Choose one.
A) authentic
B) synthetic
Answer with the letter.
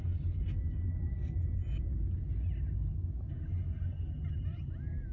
A